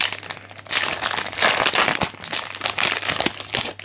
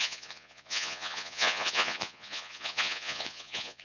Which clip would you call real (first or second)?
first